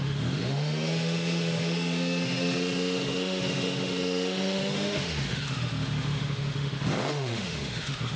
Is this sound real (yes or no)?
no